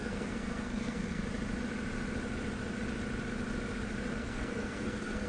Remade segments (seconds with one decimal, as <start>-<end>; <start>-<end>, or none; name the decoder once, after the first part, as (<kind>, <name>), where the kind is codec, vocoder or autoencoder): 0.0-1.2 (codec, SNAC); 4.1-5.3